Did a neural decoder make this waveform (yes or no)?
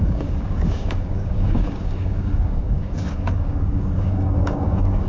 yes